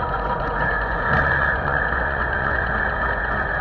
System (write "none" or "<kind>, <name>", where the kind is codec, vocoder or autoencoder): vocoder, Vocos